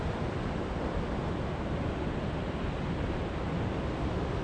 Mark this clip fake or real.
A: real